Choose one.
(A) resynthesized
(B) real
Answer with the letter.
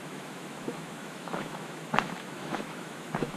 A